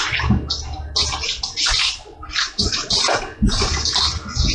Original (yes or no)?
yes